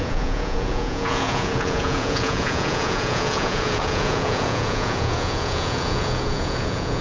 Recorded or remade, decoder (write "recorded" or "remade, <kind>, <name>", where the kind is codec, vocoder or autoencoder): remade, vocoder, Vocos